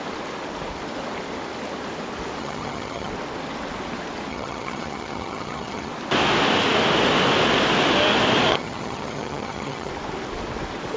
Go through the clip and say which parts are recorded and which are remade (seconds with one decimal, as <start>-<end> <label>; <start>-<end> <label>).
0.0-2.4 recorded; 2.4-3.1 remade; 3.1-4.3 recorded; 4.3-5.9 remade; 5.9-8.5 recorded; 8.5-9.9 remade; 9.9-11.0 recorded